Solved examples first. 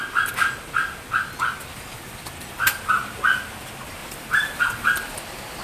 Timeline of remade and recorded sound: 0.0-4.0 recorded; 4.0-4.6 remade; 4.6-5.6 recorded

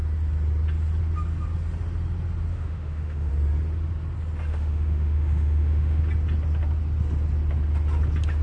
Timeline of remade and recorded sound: 0.0-2.5 recorded; 2.5-3.3 remade; 3.3-4.5 recorded; 4.5-6.0 remade; 6.0-8.4 recorded

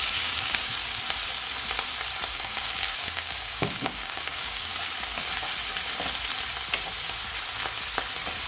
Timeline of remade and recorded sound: 0.0-0.8 remade; 0.8-2.3 recorded; 2.3-4.7 remade; 4.7-8.5 recorded

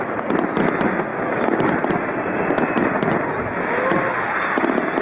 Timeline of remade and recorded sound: 0.0-5.0 recorded

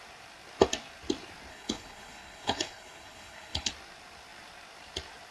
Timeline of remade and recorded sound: 0.0-1.5 recorded; 1.5-3.7 remade; 3.7-5.3 recorded